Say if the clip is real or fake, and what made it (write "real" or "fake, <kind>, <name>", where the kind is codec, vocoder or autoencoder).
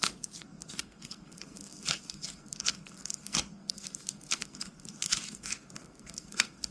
fake, codec, SNAC